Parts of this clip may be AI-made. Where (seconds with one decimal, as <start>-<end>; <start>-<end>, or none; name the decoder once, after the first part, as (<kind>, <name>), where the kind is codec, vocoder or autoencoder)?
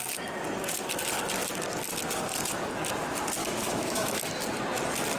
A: 3.4-4.2 (autoencoder, DAC-VAE)